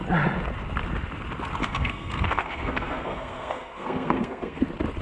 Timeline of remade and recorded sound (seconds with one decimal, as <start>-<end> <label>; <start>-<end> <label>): 0.0-1.6 recorded; 1.6-4.6 remade; 4.6-5.0 recorded